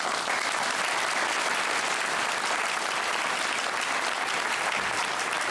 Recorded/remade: recorded